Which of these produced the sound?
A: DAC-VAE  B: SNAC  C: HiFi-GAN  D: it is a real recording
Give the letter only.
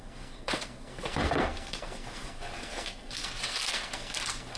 B